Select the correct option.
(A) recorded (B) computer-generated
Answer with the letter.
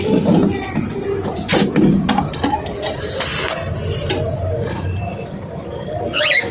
A